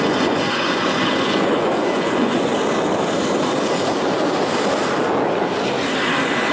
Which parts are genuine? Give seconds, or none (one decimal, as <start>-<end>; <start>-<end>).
2.5-6.5